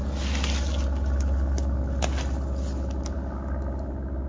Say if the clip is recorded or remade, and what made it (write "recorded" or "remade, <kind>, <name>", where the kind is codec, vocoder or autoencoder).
recorded